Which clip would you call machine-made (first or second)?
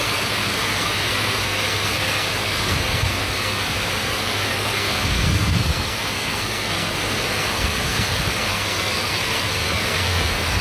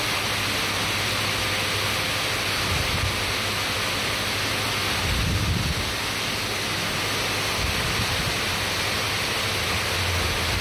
first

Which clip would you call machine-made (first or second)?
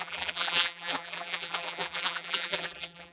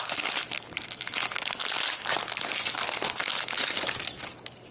first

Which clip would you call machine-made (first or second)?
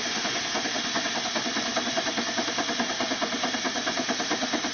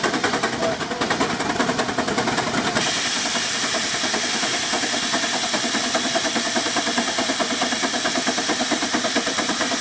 second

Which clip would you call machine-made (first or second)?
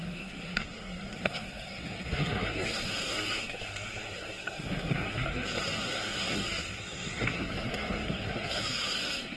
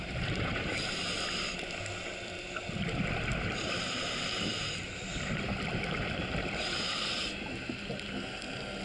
first